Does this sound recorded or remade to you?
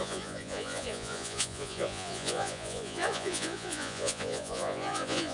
remade